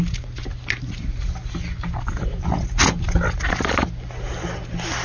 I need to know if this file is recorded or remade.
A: recorded